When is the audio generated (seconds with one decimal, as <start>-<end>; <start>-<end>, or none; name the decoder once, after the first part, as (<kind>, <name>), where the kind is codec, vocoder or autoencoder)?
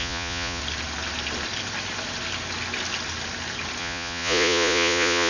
0.0-0.6 (vocoder, Vocos); 3.8-5.3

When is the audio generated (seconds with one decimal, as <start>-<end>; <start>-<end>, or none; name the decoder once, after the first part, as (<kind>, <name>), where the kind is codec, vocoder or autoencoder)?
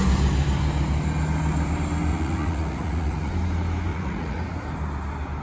2.1-3.3 (vocoder, Vocos); 3.9-4.4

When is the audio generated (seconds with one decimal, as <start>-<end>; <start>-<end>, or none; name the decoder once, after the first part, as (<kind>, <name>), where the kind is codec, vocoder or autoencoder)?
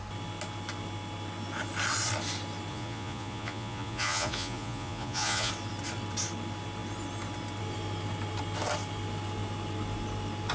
2.7-5.5 (vocoder, Vocos)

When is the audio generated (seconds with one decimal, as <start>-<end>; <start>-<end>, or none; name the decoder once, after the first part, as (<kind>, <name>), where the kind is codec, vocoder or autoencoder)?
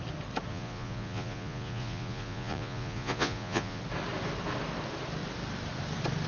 0.5-3.8 (vocoder, Vocos)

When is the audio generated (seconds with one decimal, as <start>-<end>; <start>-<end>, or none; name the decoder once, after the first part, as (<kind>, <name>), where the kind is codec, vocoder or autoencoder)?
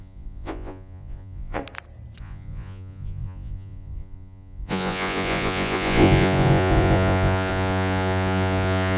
0.0-1.6 (vocoder, Vocos); 2.2-9.0